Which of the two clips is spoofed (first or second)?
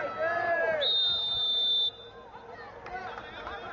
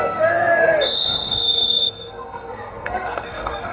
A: second